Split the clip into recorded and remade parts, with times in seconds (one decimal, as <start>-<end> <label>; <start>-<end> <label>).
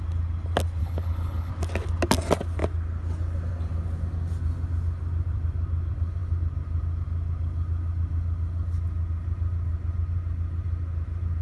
0.0-0.8 recorded; 0.8-1.5 remade; 1.5-11.4 recorded